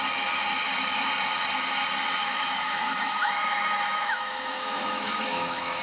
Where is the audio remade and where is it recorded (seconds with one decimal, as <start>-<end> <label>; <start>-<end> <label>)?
0.0-2.2 recorded; 2.2-5.8 remade